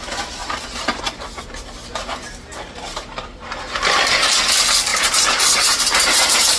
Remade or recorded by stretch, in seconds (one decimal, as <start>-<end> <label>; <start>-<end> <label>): 0.0-0.4 recorded; 0.4-1.0 remade; 1.0-1.9 recorded; 1.9-4.3 remade; 4.3-4.9 recorded; 4.9-6.6 remade

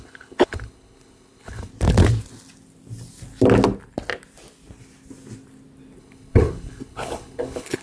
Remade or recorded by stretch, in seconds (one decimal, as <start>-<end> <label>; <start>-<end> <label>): 0.0-1.7 remade; 1.7-6.0 recorded; 6.0-7.8 remade

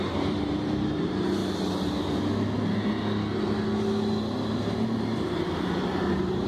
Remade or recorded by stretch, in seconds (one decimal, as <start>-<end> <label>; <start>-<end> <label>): 0.0-1.4 remade; 1.4-4.6 recorded; 4.6-6.5 remade

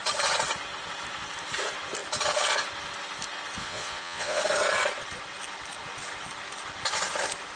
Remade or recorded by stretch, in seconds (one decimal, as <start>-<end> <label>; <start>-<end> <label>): 0.0-3.6 recorded; 3.6-4.4 remade; 4.4-7.6 recorded

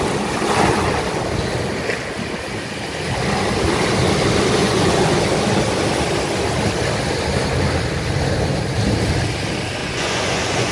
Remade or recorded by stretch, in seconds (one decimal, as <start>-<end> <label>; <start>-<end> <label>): 0.0-4.6 recorded; 4.6-5.2 remade; 5.2-9.8 recorded; 9.8-10.7 remade